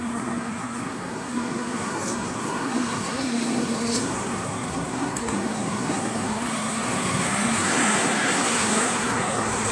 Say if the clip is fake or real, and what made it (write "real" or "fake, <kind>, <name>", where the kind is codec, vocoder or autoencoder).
fake, codec, SNAC